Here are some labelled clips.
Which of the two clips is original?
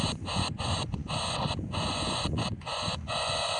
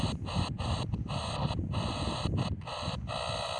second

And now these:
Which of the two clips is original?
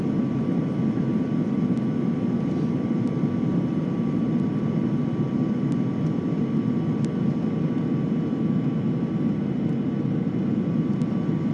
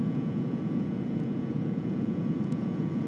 first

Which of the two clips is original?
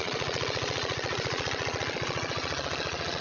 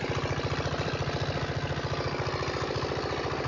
second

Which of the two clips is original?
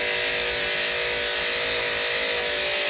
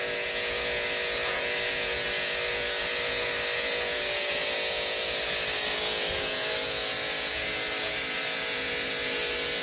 first